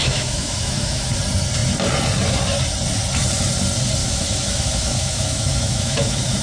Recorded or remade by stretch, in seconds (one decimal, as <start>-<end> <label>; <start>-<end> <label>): 0.0-1.2 remade; 1.2-4.0 recorded; 4.0-6.4 remade